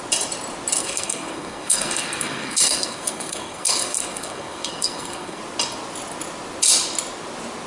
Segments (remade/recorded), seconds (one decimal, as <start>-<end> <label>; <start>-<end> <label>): 0.0-0.8 recorded; 0.8-5.4 remade; 5.4-7.7 recorded